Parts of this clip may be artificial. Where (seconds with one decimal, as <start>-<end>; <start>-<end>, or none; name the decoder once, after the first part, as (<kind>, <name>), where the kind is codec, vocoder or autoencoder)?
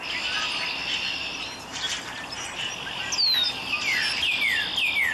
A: none